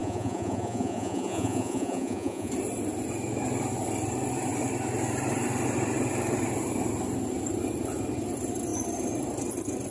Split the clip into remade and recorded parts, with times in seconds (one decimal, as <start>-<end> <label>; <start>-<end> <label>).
0.0-2.5 remade; 2.5-9.9 recorded